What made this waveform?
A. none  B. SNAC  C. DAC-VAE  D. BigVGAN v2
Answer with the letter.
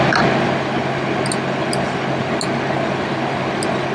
A